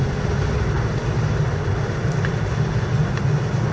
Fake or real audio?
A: real